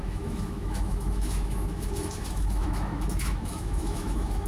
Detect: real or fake fake